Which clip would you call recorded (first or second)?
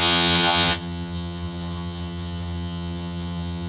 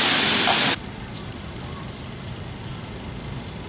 second